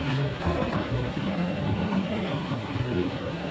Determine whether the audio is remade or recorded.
remade